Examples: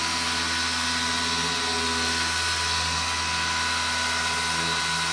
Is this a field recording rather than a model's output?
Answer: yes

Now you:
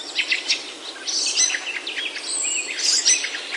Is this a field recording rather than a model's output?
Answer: yes